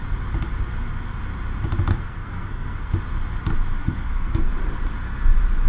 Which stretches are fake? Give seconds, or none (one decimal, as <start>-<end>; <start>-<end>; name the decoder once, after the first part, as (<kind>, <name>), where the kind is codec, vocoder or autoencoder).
1.9-2.9 (codec, SNAC); 3.8-4.5